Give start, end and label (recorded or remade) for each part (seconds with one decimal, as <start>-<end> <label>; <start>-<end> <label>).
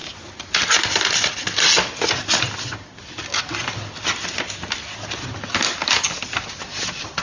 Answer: 0.0-7.2 recorded